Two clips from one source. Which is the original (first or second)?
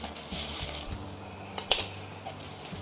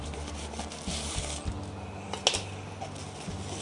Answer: second